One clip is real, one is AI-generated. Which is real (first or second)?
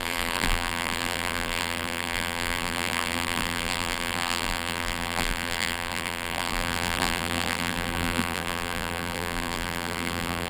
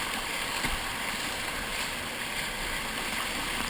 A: second